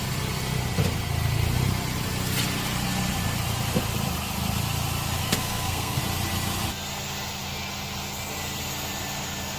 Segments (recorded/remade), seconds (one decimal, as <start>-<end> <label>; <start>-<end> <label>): 0.0-5.2 recorded; 5.2-6.0 remade; 6.0-9.6 recorded

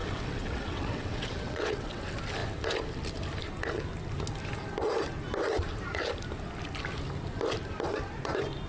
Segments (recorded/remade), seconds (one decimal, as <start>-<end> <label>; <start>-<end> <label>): 0.0-2.0 remade; 2.0-8.7 recorded

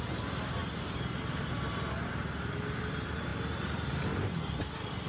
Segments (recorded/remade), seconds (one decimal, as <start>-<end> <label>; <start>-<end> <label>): 0.0-0.6 recorded; 0.6-1.5 remade; 1.5-5.1 recorded

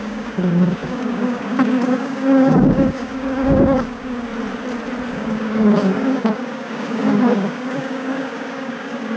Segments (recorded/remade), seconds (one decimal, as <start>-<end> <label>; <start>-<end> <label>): 0.0-4.3 remade; 4.3-5.1 recorded; 5.1-9.2 remade

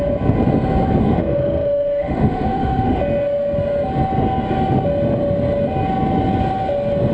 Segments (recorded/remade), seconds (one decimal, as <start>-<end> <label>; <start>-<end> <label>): 0.0-1.0 recorded; 1.0-3.0 remade; 3.0-7.1 recorded